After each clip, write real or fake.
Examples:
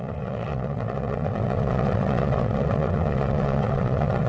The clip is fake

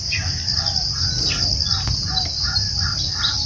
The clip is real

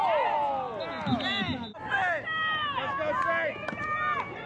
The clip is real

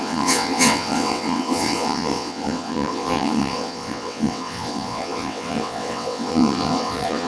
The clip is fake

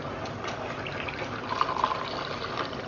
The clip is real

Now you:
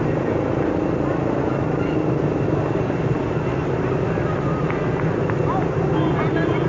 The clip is real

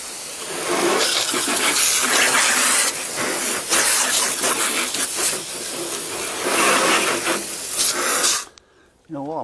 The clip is real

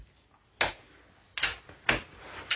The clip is real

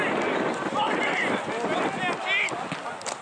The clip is real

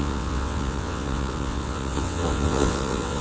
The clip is fake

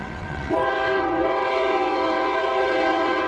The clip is fake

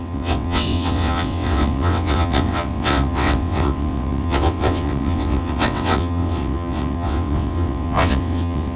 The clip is fake